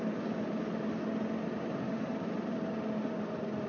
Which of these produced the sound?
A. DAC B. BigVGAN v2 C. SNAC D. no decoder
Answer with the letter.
D